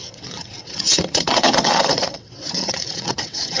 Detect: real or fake fake